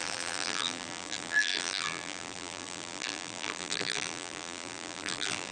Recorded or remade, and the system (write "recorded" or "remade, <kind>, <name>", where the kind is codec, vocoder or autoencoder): remade, vocoder, BigVGAN v2